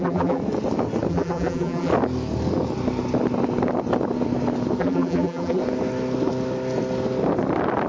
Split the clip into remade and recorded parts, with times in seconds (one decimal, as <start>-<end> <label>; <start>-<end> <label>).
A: 0.0-0.4 remade; 0.4-1.1 recorded; 1.1-1.9 remade; 1.9-4.8 recorded; 4.8-5.6 remade; 5.6-7.9 recorded